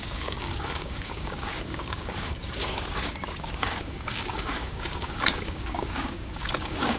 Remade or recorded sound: remade